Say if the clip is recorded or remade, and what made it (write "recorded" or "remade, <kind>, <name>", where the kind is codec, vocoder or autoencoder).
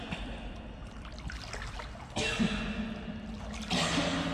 recorded